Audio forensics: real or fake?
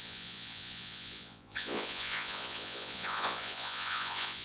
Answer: fake